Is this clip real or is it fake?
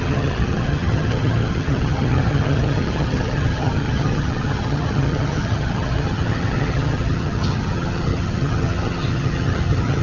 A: fake